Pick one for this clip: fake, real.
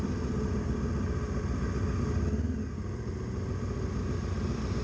real